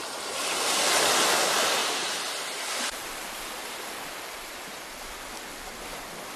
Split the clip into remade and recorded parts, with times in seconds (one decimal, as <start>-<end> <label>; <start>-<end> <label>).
0.0-1.8 recorded; 1.8-4.8 remade; 4.8-6.4 recorded